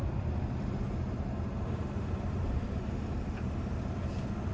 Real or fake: real